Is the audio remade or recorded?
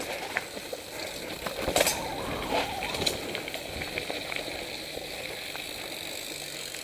recorded